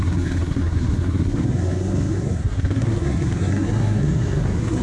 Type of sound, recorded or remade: remade